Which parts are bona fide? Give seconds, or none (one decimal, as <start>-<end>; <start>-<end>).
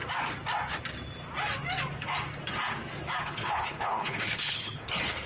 0.0-3.2